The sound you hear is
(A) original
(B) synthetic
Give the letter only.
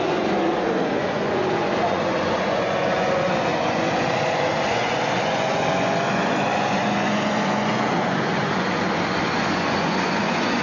B